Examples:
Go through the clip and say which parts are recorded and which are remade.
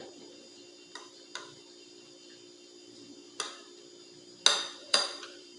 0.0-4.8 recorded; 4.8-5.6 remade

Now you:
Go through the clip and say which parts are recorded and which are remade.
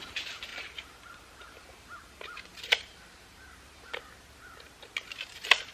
0.0-0.5 recorded; 0.5-3.9 remade; 3.9-5.7 recorded